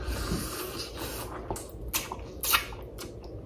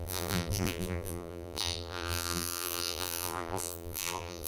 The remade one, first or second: second